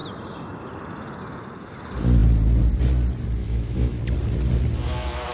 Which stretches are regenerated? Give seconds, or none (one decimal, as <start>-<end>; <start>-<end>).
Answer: 3.4-4.0